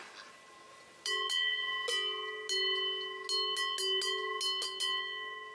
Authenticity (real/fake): real